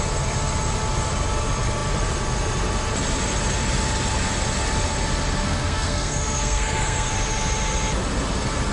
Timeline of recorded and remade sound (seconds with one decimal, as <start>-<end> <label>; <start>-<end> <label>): 0.0-5.4 recorded; 5.4-7.1 remade; 7.1-8.7 recorded